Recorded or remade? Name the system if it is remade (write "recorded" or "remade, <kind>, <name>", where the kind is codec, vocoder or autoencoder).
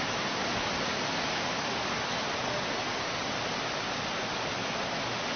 recorded